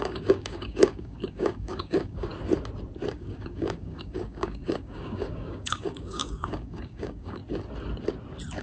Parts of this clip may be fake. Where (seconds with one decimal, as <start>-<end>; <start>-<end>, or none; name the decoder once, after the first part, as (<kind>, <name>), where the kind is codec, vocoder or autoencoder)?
0.0-2.3 (codec, DAC); 3.1-7.4